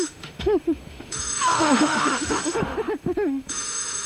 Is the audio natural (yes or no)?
no